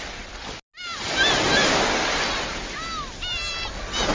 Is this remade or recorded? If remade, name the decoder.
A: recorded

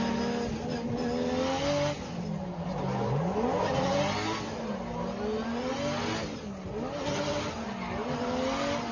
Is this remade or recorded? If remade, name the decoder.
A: recorded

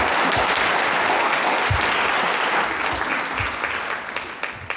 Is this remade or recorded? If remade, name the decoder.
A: recorded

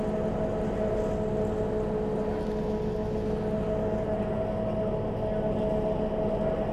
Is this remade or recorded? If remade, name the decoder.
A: recorded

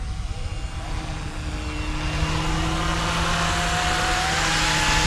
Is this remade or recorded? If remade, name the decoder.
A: recorded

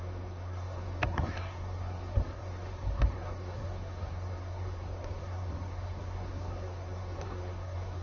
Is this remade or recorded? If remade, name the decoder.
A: remade, codec, SNAC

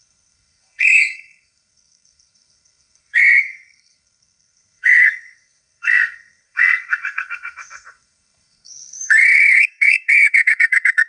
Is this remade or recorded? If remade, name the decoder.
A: remade, codec, SNAC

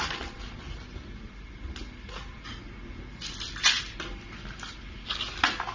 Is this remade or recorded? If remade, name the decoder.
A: recorded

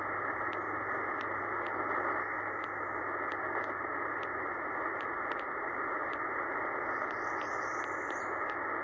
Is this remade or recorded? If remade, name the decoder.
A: recorded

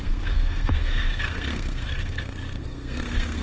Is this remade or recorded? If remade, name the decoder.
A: remade, codec, SNAC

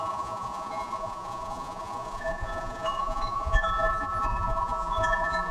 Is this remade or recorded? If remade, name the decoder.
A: remade, vocoder, Vocos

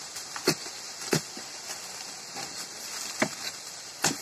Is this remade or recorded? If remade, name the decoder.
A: recorded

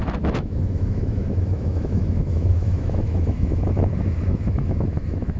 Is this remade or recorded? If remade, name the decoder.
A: remade, autoencoder, DAC-VAE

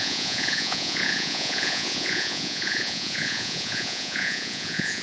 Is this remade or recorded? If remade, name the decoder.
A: remade, vocoder, Vocos